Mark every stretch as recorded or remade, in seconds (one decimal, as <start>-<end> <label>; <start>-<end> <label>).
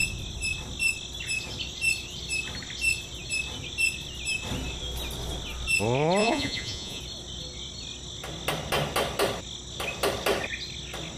0.0-6.2 recorded; 6.2-7.0 remade; 7.0-11.2 recorded